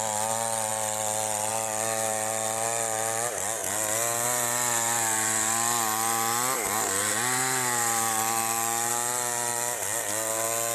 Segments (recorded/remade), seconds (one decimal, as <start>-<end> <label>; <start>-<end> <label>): 0.0-10.7 recorded